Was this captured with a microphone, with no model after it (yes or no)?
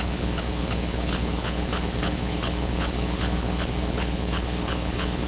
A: no